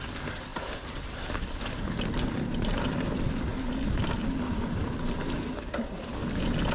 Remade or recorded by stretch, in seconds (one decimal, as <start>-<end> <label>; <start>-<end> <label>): 0.0-0.5 recorded; 0.5-3.1 remade; 3.1-6.7 recorded